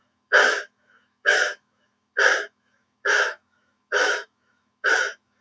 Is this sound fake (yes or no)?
yes